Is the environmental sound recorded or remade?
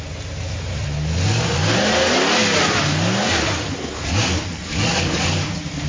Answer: recorded